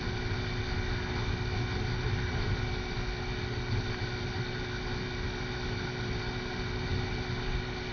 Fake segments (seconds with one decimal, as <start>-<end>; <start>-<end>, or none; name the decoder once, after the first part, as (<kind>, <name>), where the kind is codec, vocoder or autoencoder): none